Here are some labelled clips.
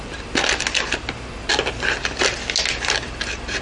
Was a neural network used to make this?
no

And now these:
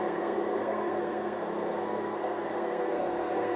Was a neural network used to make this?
yes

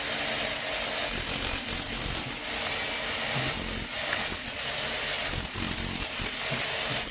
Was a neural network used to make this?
no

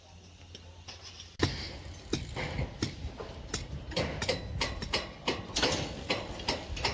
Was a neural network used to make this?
no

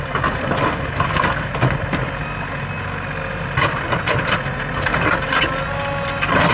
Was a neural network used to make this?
no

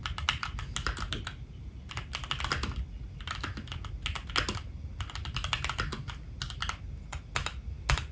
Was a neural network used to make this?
no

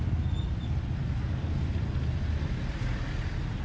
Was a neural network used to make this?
no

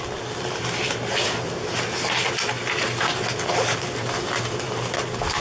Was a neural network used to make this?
no